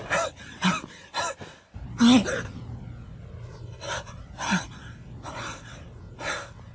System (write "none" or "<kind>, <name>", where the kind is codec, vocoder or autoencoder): none